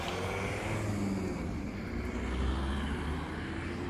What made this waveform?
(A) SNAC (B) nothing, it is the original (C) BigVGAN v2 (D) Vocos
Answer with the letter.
B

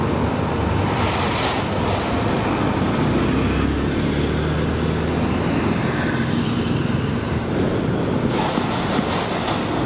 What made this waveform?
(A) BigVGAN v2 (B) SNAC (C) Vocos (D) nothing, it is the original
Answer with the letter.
D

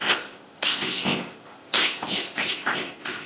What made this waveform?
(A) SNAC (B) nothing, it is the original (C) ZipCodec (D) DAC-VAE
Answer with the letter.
C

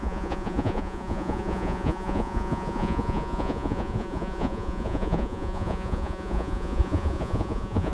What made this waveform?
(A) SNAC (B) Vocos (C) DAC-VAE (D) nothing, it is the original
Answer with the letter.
B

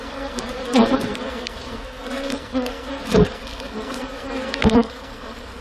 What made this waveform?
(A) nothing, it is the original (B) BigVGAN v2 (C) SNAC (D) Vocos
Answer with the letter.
C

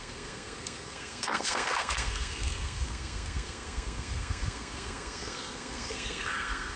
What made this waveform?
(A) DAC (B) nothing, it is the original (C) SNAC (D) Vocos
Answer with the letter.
C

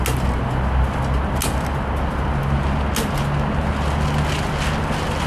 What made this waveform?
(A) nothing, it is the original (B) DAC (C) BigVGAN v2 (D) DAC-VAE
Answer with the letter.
A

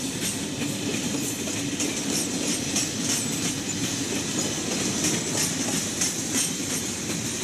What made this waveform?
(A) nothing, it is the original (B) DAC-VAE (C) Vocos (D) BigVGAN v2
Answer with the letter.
A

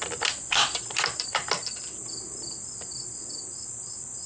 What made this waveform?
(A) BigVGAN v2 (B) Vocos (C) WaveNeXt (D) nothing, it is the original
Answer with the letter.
A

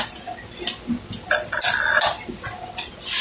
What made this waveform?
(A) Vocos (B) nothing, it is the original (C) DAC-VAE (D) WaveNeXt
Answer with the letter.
B